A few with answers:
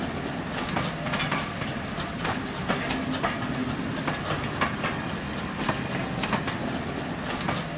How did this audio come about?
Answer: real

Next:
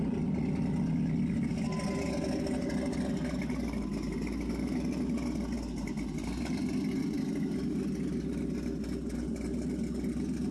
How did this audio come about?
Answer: real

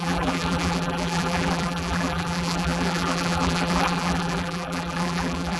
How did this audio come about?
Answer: fake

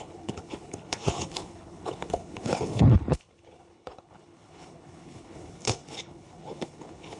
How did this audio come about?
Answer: fake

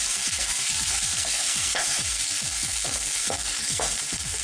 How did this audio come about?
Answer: fake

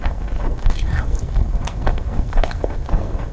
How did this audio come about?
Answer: fake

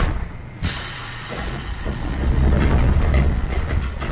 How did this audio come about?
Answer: fake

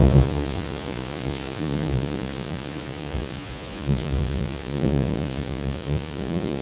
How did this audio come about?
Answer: fake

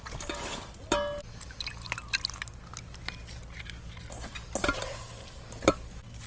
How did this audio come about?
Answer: real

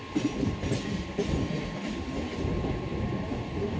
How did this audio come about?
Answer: real